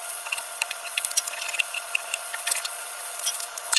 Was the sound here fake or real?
fake